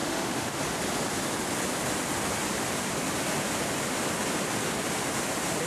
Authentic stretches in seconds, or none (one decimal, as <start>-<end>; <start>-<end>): 0.6-5.7